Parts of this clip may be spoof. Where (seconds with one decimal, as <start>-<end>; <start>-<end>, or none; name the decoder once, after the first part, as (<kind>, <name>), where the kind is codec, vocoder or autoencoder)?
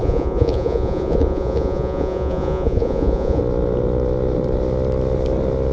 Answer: 0.0-3.4 (vocoder, Vocos)